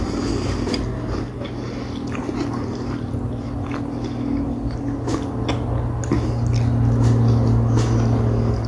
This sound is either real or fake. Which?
real